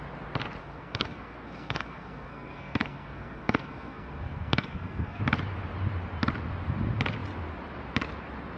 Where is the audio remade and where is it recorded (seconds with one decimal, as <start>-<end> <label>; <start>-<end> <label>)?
0.0-0.6 recorded; 0.6-5.2 remade; 5.2-8.6 recorded